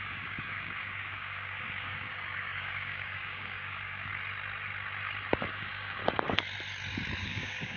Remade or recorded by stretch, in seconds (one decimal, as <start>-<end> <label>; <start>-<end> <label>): 0.0-4.1 remade; 4.1-5.5 recorded; 5.5-6.0 remade; 6.0-7.2 recorded; 7.2-7.8 remade